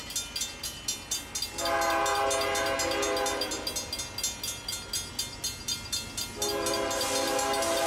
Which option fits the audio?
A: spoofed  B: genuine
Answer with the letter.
B